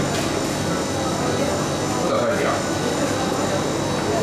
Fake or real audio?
real